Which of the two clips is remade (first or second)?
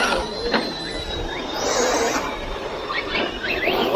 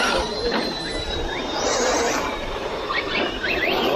second